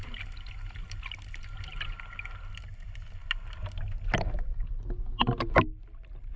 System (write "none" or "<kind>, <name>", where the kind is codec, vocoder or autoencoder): none